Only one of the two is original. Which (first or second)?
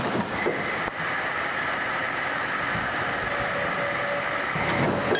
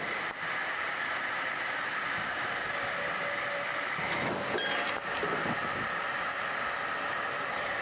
first